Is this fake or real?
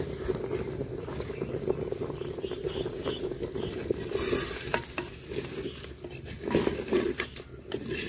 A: real